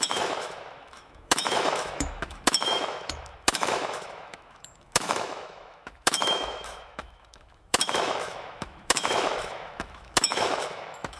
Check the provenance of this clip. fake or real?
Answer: fake